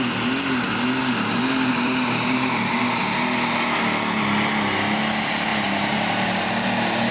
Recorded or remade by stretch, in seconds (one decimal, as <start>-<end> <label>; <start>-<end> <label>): 0.0-1.0 recorded; 1.0-3.0 remade; 3.0-5.5 recorded; 5.5-6.5 remade; 6.5-7.1 recorded